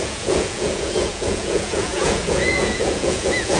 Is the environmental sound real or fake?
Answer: fake